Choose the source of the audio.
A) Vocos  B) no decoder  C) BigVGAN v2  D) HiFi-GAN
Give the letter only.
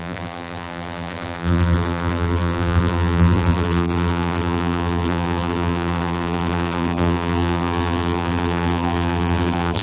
C